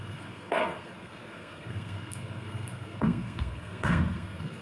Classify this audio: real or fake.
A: fake